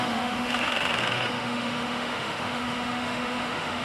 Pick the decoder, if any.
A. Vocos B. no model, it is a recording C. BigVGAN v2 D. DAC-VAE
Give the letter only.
D